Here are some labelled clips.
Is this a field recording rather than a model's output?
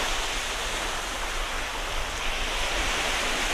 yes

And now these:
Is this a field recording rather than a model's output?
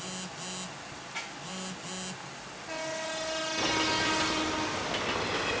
yes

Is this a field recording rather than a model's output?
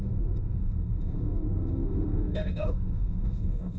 no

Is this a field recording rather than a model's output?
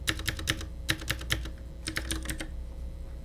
yes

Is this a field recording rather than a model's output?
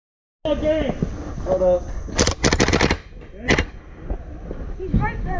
yes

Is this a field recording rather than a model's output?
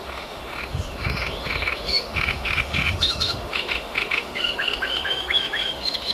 no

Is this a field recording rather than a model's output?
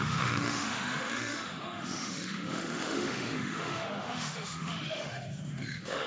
no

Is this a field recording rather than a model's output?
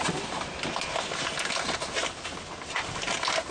yes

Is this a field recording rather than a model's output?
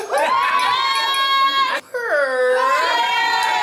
yes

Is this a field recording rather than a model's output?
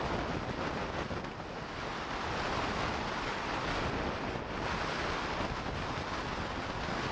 yes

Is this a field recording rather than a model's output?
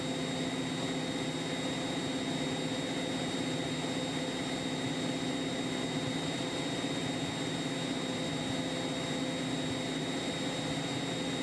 yes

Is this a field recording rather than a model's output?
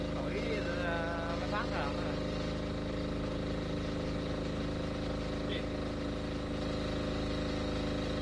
yes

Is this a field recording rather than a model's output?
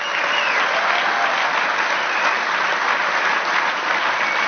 yes